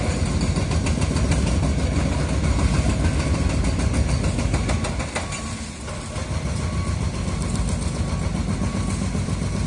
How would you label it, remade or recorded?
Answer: recorded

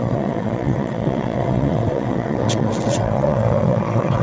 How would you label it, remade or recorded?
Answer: remade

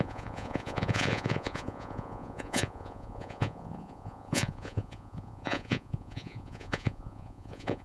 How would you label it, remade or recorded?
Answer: remade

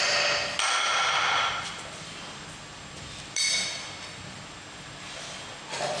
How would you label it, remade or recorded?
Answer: recorded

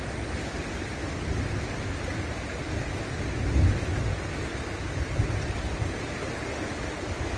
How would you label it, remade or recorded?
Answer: recorded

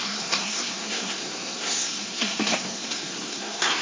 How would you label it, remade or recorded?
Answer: remade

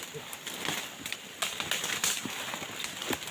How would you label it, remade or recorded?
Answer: recorded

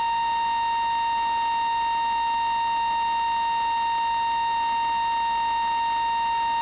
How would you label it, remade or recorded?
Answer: recorded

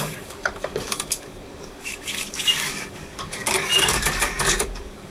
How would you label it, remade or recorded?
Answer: remade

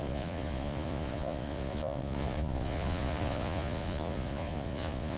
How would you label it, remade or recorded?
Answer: remade